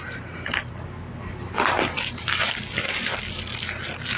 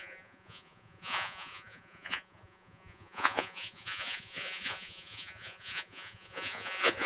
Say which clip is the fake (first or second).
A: second